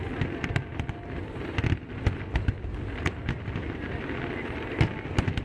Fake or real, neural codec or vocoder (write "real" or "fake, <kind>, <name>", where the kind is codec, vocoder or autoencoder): real